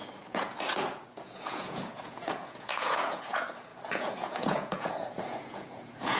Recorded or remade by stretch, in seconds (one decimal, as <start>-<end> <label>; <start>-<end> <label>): 0.0-6.2 remade